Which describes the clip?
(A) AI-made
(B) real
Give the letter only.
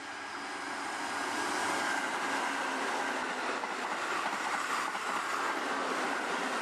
B